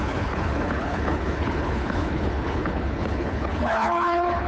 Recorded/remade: remade